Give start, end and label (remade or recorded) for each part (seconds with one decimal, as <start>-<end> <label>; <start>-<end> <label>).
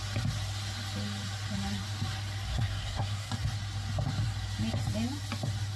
0.0-2.5 recorded; 2.5-3.3 remade; 3.3-5.8 recorded